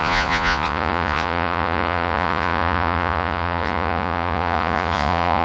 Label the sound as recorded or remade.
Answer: remade